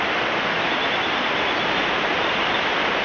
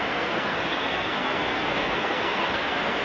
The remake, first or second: second